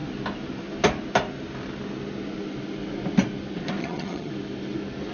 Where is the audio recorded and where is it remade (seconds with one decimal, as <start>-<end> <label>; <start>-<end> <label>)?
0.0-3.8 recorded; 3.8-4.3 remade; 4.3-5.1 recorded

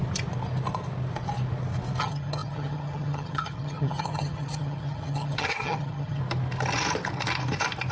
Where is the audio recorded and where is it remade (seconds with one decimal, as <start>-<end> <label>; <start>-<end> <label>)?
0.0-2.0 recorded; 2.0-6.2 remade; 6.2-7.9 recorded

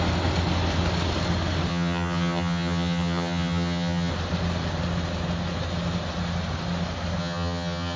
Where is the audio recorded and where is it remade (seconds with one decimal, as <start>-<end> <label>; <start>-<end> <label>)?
0.0-1.7 recorded; 1.7-4.1 remade; 4.1-7.2 recorded; 7.2-8.0 remade

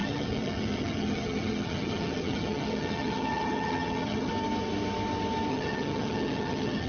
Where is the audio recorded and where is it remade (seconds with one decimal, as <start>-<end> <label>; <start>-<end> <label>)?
0.0-4.3 remade; 4.3-5.5 recorded; 5.5-6.9 remade